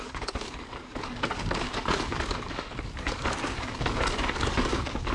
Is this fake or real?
fake